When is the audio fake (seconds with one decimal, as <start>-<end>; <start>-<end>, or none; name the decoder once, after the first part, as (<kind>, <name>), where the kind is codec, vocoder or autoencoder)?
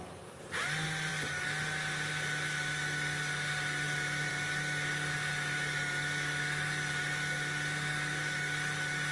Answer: none